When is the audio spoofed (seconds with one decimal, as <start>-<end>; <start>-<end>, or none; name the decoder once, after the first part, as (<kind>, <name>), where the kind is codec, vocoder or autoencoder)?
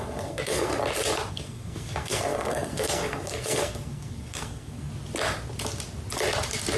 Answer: 0.0-0.7 (codec, SNAC); 1.3-4.9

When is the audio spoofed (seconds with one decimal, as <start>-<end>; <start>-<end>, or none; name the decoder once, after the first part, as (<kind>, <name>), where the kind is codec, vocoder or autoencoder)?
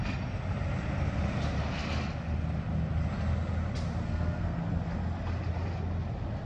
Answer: 4.0-4.6 (codec, SNAC)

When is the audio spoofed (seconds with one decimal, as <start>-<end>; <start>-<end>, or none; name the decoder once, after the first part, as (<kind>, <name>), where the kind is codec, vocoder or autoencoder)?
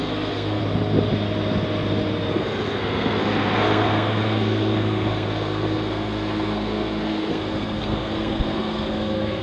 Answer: 0.0-0.6 (codec, SNAC); 2.3-9.4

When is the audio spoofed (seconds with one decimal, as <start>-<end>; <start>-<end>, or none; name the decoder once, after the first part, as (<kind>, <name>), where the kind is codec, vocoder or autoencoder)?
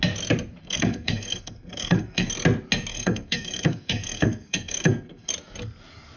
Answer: 0.6-2.3 (codec, SNAC); 2.9-5.3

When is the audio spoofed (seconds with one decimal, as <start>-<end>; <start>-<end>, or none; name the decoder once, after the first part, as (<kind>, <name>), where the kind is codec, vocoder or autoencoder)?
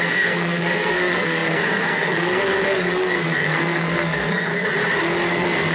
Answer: 0.0-4.5 (codec, SNAC); 5.3-5.7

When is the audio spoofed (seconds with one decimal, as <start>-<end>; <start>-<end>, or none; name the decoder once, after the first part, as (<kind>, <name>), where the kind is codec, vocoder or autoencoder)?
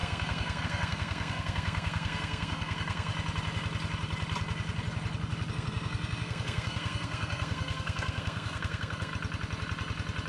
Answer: 0.0-3.1 (codec, SNAC); 5.5-9.1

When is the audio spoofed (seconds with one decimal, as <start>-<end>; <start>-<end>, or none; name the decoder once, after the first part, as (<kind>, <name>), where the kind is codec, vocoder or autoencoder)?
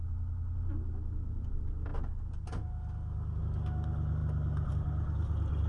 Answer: none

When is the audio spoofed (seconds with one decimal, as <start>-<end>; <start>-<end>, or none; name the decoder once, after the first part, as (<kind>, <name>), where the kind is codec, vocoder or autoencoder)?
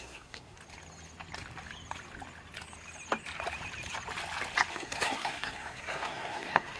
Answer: 0.0-0.6 (codec, SNAC); 4.7-6.8